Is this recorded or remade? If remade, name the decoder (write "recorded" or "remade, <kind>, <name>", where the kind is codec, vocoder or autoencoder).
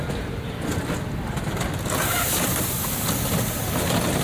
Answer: recorded